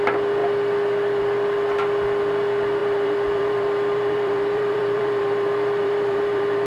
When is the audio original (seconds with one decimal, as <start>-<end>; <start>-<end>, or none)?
0.0-2.8